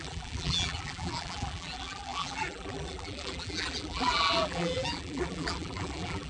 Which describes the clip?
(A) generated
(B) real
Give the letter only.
A